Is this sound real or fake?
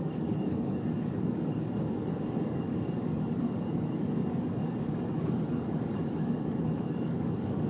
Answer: fake